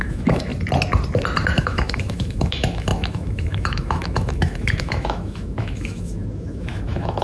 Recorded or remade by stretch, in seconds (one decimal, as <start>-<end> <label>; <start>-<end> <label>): 0.0-0.5 remade; 0.5-1.6 recorded; 1.6-7.2 remade